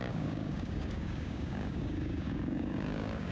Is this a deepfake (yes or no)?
yes